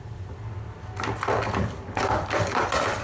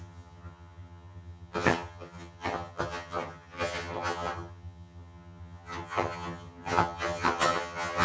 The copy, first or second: second